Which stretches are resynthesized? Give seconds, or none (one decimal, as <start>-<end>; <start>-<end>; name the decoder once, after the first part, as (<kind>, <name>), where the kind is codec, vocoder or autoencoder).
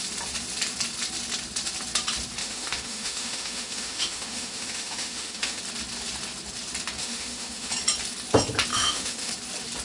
2.4-5.6 (autoencoder, DAC-VAE); 7.0-7.7; 8.7-9.3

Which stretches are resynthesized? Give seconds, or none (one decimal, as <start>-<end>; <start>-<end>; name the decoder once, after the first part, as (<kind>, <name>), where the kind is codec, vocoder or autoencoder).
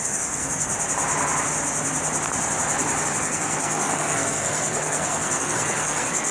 0.0-0.7 (codec, SNAC); 3.2-6.3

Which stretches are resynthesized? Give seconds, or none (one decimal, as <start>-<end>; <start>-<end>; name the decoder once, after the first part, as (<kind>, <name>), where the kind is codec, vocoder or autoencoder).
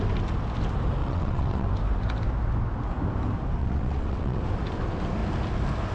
1.0-1.7 (vocoder, WaveNeXt); 3.6-4.4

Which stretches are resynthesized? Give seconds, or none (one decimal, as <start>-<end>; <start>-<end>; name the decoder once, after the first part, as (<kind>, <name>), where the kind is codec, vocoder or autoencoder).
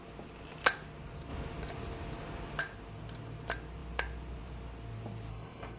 5.3-5.8 (codec, SNAC)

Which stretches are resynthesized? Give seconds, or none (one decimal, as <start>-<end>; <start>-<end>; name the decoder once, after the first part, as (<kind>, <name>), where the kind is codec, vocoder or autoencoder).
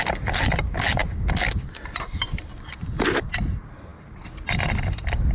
none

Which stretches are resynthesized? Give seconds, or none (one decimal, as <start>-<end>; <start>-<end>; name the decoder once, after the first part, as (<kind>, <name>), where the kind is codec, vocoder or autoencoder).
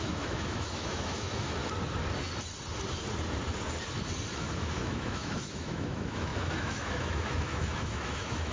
0.0-1.6 (autoencoder, DAC-VAE); 4.4-8.5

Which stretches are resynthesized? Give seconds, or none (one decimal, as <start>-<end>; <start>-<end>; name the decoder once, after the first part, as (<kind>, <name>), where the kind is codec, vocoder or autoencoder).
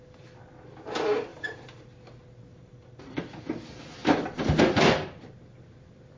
1.3-1.8 (vocoder, BigVGAN v2); 2.5-3.2; 4.0-4.6